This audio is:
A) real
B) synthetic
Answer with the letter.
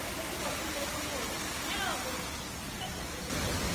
A